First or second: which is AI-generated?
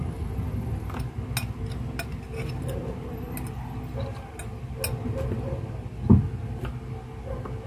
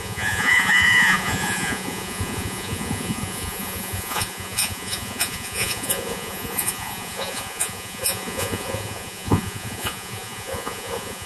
second